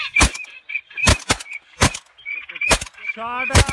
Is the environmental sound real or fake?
real